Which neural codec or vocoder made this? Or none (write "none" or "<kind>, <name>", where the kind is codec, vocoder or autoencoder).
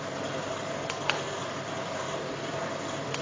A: vocoder, BigVGAN v2